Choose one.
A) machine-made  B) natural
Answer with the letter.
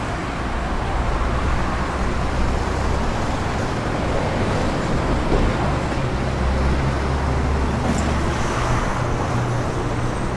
B